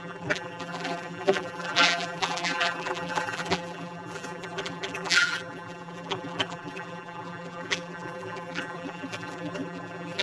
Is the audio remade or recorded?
remade